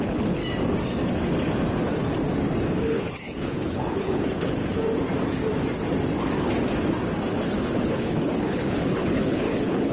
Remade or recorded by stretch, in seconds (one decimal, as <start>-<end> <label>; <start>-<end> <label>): 0.0-0.4 remade; 0.4-2.8 recorded; 2.8-4.6 remade; 4.6-7.4 recorded; 7.4-9.9 remade